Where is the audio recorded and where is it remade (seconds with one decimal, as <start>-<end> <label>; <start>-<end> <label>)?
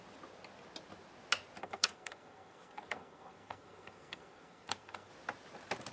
0.0-1.6 recorded; 1.6-5.1 remade; 5.1-5.9 recorded